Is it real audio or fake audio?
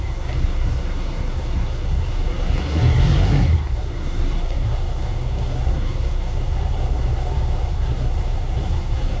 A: fake